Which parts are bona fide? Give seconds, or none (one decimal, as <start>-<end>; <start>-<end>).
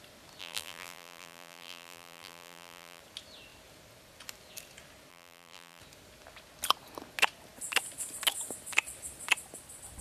0.0-0.4; 3.0-5.1; 5.8-10.0